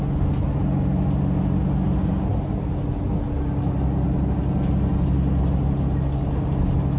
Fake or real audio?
real